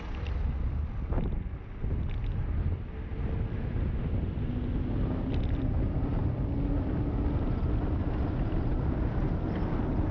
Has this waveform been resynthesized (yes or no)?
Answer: no